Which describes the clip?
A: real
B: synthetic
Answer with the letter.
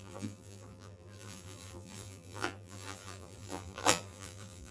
B